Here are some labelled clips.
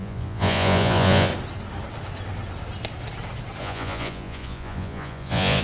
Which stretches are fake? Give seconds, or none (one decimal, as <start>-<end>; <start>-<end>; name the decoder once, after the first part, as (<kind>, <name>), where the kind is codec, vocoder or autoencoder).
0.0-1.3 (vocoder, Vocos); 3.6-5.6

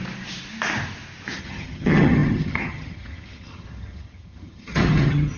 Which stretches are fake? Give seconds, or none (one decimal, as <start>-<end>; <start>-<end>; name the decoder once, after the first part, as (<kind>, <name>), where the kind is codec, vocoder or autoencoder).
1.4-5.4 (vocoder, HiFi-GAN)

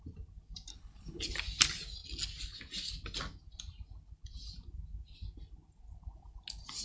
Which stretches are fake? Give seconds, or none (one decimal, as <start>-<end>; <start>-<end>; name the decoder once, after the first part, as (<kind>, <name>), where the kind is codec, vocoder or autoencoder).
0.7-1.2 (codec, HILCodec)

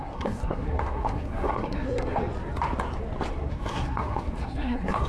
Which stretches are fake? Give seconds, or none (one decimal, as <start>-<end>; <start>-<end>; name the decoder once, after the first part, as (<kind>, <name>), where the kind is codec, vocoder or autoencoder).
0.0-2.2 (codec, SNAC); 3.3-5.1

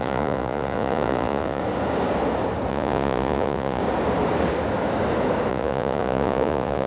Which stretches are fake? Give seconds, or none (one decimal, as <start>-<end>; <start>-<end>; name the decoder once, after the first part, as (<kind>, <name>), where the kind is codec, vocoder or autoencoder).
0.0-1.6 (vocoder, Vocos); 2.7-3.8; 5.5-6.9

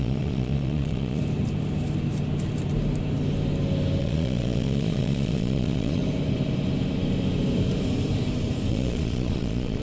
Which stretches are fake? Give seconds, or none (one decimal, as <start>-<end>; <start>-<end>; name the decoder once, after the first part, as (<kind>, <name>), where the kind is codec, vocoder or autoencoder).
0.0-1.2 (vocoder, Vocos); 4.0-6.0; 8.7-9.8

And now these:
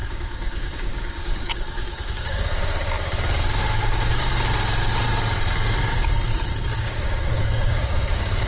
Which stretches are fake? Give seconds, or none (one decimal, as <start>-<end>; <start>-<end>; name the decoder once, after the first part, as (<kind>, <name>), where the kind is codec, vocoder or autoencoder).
0.0-4.3 (codec, DAC); 6.6-8.5

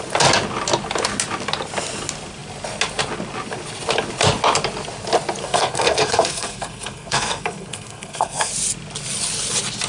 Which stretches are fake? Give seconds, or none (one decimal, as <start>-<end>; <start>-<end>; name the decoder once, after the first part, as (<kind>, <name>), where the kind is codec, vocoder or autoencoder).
5.4-8.5 (codec, SNAC)